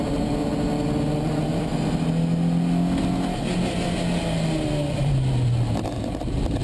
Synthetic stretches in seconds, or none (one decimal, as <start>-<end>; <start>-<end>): 0.0-0.4; 1.0-1.7; 5.0-6.6